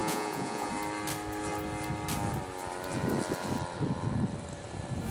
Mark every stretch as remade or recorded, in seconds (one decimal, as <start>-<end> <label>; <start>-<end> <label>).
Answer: 0.0-0.7 remade; 0.7-5.1 recorded